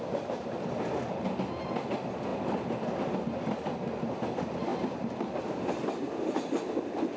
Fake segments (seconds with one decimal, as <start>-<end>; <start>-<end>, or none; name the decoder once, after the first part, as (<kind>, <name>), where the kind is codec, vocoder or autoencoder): 4.7-6.6 (vocoder, BigVGAN v2)